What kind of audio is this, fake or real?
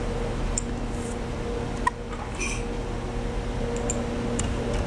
real